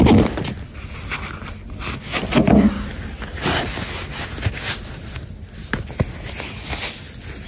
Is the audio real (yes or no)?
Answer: yes